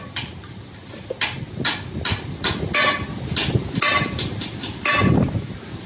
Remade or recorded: recorded